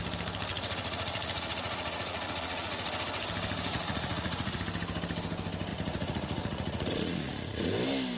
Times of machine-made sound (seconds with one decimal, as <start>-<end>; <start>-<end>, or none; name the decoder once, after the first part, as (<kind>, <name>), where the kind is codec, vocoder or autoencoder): 0.5-2.9 (vocoder, Vocos); 3.7-4.6; 5.7-7.7

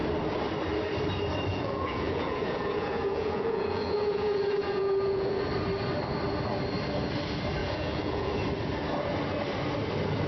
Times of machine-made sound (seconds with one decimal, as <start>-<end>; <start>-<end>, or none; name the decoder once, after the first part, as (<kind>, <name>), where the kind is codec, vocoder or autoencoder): 1.5-5.5 (vocoder, Vocos); 7.6-8.3

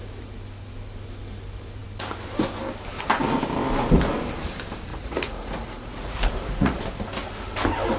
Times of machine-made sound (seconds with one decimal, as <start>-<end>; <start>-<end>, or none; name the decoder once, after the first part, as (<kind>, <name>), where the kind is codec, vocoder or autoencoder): 4.9-6.8 (vocoder, Vocos)

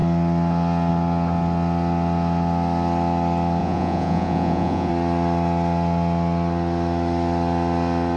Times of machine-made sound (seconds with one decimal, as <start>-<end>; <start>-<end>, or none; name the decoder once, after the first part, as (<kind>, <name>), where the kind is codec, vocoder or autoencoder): 3.6-4.9 (vocoder, Vocos)